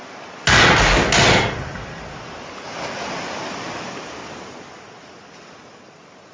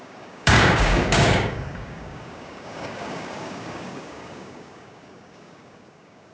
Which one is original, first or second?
first